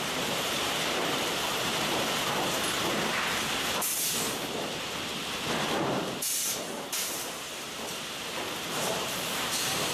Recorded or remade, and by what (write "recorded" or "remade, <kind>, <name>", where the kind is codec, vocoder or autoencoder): remade, vocoder, BigVGAN v2